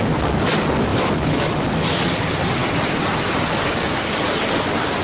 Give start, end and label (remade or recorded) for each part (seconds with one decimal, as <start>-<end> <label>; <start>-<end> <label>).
0.0-0.9 recorded; 0.9-2.0 remade; 2.0-5.0 recorded